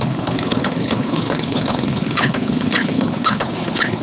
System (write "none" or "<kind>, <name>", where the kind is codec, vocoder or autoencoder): codec, HILCodec